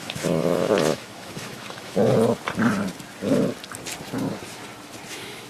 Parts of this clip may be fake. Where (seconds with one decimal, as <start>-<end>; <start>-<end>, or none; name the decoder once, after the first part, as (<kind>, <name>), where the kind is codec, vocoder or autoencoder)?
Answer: 0.0-2.0 (autoencoder, DAC-VAE); 5.1-5.5